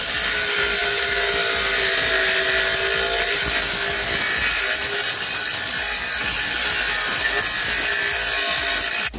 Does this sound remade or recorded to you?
recorded